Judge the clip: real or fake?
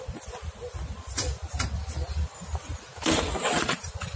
real